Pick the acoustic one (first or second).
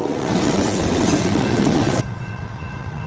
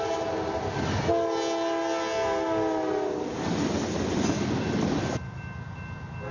second